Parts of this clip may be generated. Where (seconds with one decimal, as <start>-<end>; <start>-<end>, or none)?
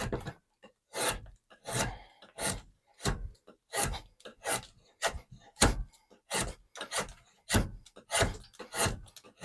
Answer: none